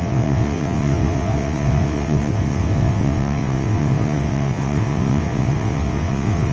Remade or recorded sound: remade